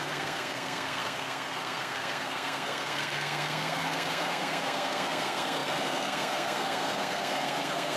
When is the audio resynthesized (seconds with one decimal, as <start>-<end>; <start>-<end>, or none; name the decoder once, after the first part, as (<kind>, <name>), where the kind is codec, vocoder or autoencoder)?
0.0-8.0 (codec, SNAC)